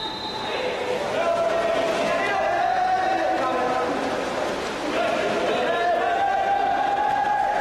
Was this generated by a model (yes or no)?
no